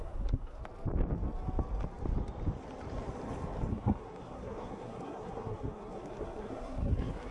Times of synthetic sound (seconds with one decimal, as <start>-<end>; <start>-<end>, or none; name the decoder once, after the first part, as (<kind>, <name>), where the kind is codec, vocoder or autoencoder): 0.0-0.6 (codec, SNAC); 3.7-7.3